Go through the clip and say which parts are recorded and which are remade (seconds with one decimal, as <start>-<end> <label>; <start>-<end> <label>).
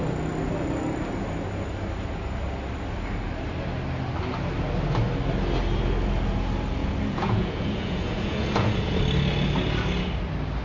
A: 0.0-6.8 recorded; 6.8-9.0 remade; 9.0-10.6 recorded